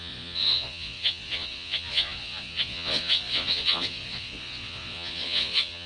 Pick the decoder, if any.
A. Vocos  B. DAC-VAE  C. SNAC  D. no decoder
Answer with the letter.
A